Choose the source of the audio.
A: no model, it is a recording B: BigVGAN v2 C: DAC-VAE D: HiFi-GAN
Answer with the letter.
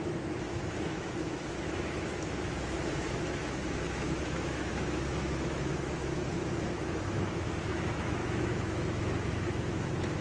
C